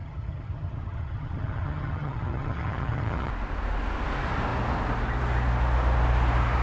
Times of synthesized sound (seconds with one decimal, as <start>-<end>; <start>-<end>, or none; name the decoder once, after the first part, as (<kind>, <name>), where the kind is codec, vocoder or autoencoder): 0.0-3.3 (vocoder, HiFi-GAN)